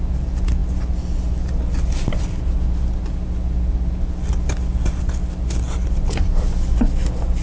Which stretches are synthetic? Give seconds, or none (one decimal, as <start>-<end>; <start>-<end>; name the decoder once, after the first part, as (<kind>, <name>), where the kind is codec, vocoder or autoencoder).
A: none